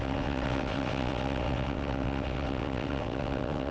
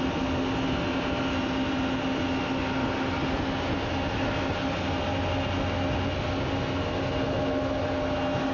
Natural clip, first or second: second